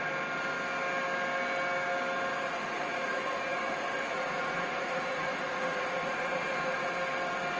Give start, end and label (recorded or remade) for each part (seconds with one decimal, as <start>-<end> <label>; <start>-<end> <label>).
0.0-2.3 recorded; 2.3-6.9 remade; 6.9-7.6 recorded